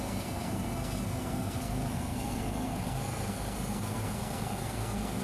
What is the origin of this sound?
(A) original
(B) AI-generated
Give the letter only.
B